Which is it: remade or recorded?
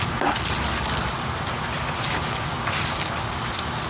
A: recorded